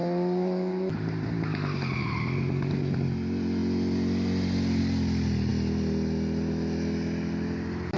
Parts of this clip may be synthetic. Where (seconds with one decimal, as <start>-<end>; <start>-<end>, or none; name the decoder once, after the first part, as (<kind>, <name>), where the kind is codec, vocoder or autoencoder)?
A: none